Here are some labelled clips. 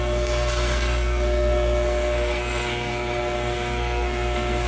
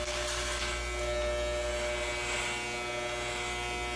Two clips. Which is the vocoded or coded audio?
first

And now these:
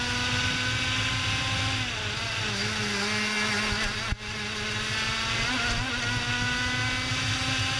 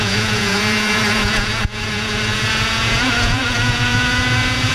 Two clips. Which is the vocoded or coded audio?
second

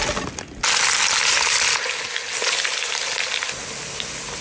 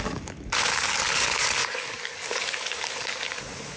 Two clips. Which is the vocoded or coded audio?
second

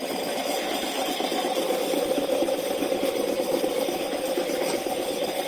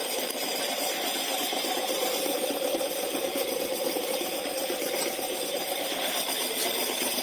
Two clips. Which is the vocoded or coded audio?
second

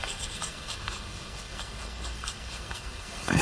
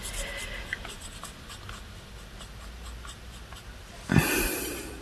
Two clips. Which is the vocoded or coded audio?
first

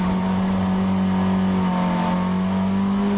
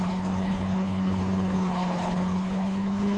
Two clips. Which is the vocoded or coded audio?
second